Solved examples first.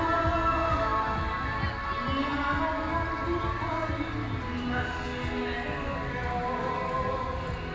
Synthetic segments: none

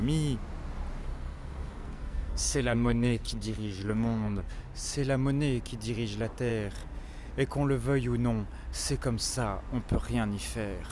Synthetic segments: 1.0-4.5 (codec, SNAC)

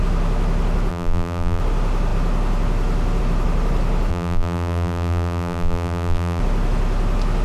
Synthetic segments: 0.9-1.6 (vocoder, BigVGAN v2); 4.1-6.4